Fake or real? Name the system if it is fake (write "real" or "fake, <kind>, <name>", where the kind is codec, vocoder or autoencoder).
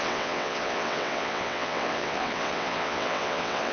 fake, vocoder, WaveNeXt